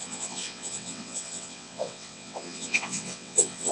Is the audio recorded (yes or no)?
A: no